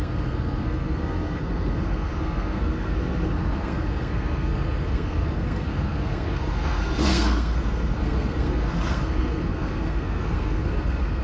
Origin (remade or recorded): remade